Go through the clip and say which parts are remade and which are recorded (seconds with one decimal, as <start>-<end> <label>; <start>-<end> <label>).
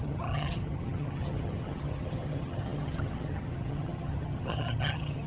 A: 0.0-5.3 remade